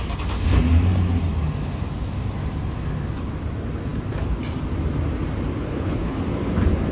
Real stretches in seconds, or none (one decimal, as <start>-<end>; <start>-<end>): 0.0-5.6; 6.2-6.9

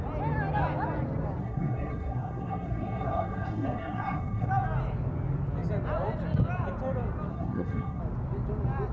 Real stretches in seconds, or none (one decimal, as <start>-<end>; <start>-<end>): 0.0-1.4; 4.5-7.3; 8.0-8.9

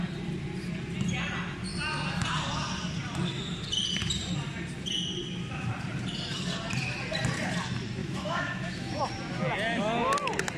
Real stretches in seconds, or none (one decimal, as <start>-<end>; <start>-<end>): 0.0-8.0; 9.0-10.6

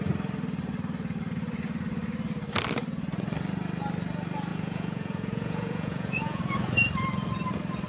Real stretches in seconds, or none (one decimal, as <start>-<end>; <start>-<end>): 0.0-4.5; 6.4-7.9